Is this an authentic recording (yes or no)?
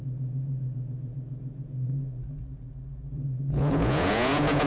no